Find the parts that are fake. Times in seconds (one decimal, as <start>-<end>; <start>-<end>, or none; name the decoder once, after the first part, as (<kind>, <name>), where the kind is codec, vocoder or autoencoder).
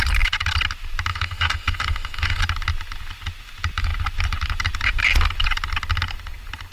1.1-2.4 (autoencoder, DAC-VAE)